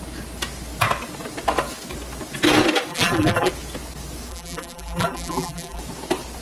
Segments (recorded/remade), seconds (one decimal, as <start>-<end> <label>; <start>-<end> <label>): 0.0-2.9 recorded; 2.9-3.5 remade; 3.5-4.3 recorded; 4.3-5.8 remade; 5.8-6.4 recorded